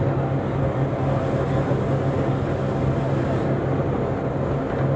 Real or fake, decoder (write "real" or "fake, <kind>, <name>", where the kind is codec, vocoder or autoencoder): real